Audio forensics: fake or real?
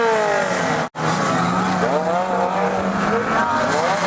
real